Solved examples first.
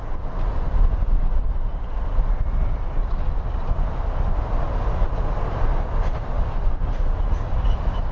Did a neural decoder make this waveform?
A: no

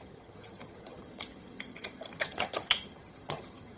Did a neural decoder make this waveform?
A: yes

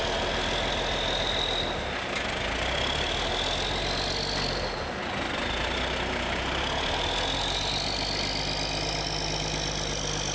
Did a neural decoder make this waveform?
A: no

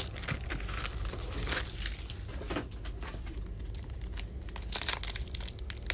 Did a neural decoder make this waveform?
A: no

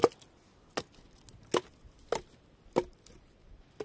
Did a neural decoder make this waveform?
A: no